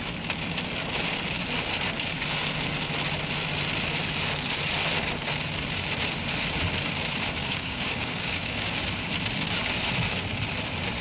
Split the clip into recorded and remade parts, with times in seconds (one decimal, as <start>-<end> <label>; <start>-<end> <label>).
0.0-7.4 recorded; 7.4-8.8 remade; 8.8-11.0 recorded

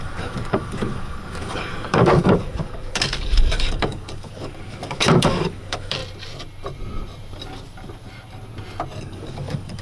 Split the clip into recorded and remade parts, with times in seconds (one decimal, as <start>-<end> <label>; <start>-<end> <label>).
0.0-6.0 remade; 6.0-9.0 recorded; 9.0-9.8 remade

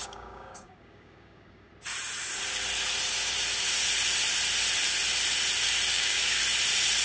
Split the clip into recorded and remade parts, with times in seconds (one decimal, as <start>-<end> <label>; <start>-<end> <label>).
0.0-1.7 remade; 1.7-5.9 recorded; 5.9-6.4 remade; 6.4-7.0 recorded